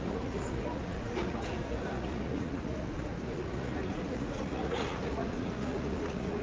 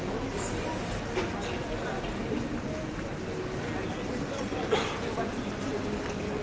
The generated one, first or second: first